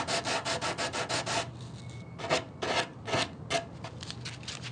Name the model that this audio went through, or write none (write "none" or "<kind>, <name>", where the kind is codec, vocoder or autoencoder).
none